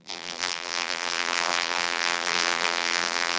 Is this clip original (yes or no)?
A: no